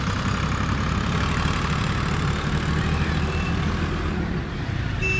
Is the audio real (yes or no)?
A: yes